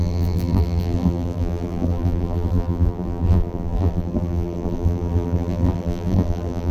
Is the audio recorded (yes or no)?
no